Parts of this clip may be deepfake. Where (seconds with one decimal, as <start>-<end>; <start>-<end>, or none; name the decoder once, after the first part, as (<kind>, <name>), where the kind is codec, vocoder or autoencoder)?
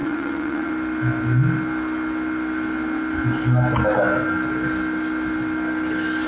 0.0-0.7 (vocoder, WaveNeXt)